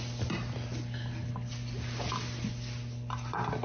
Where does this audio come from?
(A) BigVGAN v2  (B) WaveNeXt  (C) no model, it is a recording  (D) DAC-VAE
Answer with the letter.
C